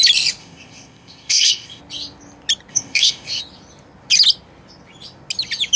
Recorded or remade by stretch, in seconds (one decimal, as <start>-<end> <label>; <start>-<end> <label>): 0.0-0.4 recorded; 0.4-1.8 remade; 1.8-2.7 recorded; 2.7-3.4 remade; 3.4-5.8 recorded